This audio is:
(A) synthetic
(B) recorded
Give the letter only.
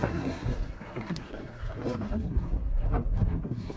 A